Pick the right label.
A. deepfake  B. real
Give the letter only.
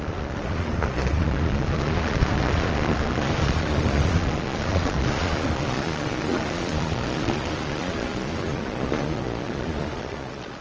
A